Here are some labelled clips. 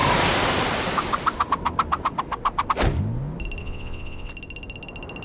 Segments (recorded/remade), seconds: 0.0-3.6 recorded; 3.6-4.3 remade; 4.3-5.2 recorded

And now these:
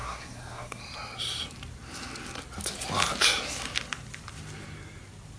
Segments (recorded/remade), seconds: 0.0-0.8 remade; 0.8-5.4 recorded